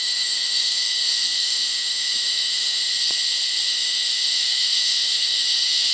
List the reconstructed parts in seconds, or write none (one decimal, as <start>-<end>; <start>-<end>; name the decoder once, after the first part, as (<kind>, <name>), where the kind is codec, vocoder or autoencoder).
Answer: 0.0-2.8 (autoencoder, DAC-VAE); 3.7-5.9